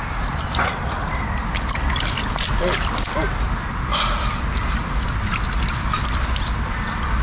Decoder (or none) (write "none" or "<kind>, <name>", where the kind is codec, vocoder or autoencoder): none